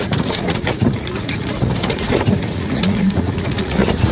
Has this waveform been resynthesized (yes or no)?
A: yes